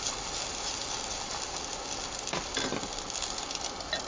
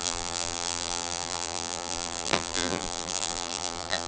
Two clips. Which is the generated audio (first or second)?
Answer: second